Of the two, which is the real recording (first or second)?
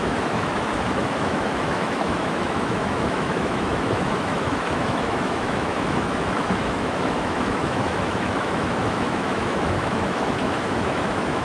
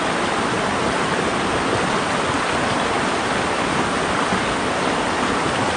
second